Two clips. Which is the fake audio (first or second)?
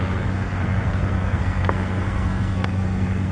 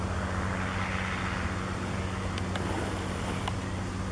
first